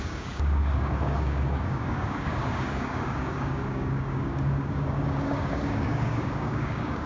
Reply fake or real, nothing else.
fake